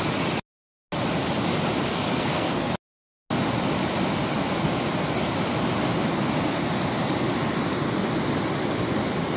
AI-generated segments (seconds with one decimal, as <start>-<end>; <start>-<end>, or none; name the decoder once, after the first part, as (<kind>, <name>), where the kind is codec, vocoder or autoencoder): 1.9-2.7 (codec, SNAC)

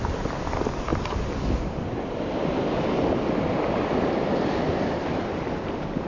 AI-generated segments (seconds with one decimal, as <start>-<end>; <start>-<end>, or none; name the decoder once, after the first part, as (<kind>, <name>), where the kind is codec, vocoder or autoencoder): none

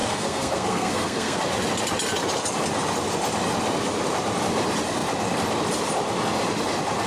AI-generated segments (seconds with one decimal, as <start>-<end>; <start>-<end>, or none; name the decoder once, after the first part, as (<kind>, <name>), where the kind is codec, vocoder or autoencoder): 0.0-1.4 (codec, SNAC)

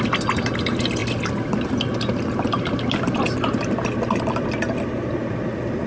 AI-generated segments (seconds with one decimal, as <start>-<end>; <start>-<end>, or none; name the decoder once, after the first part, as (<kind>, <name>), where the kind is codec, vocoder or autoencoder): none

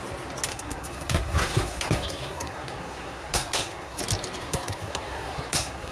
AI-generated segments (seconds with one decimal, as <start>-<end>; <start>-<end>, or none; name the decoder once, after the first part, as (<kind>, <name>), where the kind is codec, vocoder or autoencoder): 0.5-4.0 (codec, SNAC); 4.4-5.9

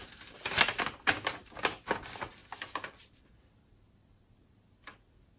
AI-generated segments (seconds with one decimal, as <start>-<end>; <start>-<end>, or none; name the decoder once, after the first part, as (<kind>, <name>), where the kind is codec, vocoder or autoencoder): none